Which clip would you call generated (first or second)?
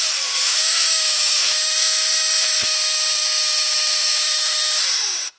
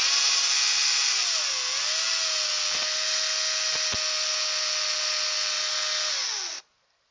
first